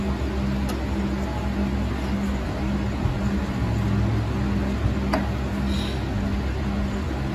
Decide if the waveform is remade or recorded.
recorded